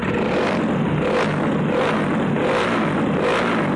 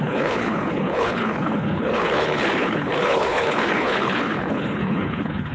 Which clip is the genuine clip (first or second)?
first